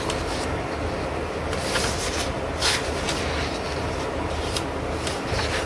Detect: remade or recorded recorded